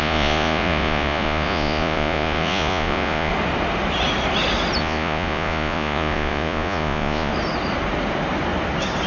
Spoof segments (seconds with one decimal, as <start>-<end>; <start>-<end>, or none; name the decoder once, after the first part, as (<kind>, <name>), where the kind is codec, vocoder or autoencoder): 0.0-3.3 (vocoder, Vocos); 4.8-7.3

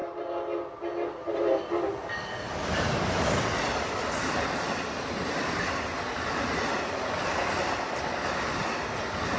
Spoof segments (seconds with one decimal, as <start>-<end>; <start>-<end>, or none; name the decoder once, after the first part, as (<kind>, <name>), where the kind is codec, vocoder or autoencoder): none

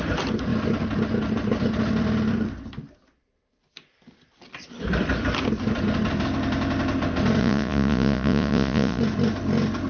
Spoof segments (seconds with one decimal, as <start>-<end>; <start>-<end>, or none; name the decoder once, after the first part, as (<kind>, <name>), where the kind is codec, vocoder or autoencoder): 7.4-9.0 (vocoder, Vocos)

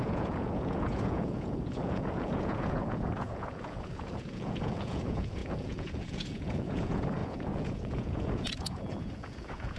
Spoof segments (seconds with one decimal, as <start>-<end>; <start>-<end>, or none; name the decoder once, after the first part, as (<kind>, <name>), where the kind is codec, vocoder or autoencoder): 0.0-9.8 (vocoder, Vocos)

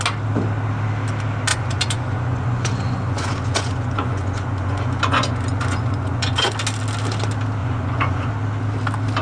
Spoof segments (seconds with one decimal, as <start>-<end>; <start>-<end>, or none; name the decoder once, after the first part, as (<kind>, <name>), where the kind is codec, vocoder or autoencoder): 1.5-6.5 (vocoder, Vocos); 7.6-8.3